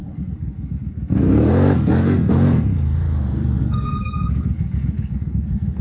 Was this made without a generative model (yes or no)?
no